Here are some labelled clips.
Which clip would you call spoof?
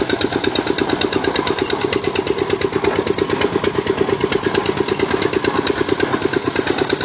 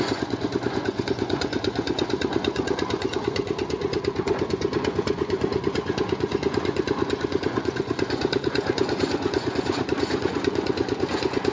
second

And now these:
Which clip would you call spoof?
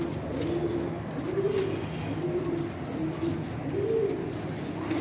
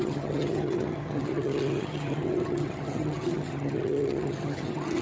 second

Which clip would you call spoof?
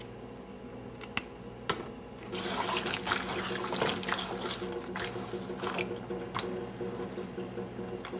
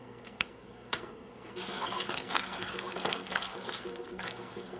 second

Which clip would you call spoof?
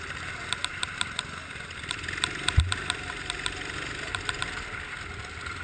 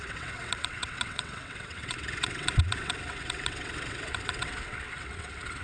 second